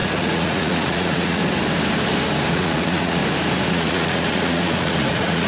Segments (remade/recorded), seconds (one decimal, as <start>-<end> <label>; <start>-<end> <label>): 0.0-1.4 remade; 1.4-2.5 recorded; 2.5-3.2 remade; 3.2-3.7 recorded; 3.7-5.5 remade